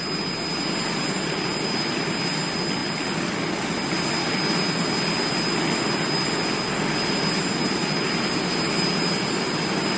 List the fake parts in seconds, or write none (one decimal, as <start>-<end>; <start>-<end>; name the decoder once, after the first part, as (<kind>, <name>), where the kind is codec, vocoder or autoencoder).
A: none